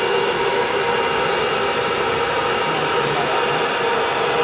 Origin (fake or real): real